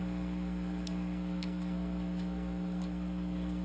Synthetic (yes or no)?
yes